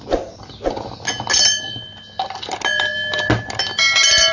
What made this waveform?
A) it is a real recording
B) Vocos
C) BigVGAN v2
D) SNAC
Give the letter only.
A